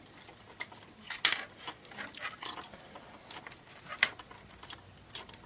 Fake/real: real